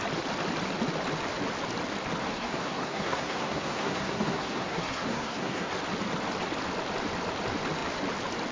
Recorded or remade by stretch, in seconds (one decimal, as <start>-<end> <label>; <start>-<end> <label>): 0.0-2.3 recorded; 2.3-5.7 remade; 5.7-8.5 recorded